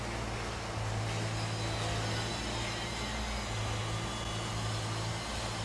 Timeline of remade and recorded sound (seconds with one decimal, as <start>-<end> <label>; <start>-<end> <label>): 0.0-5.6 recorded